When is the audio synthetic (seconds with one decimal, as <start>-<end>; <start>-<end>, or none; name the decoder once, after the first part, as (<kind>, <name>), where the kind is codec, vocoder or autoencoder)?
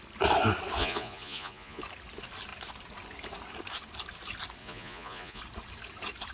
0.8-1.8 (vocoder, Vocos); 4.6-5.4